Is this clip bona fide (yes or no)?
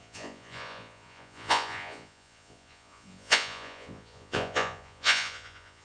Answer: no